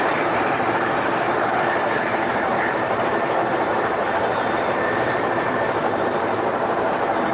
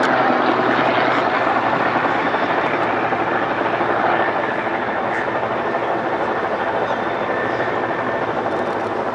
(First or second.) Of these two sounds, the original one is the second